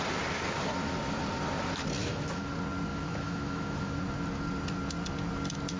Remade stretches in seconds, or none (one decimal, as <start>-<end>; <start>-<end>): 2.0-2.5; 2.9-3.9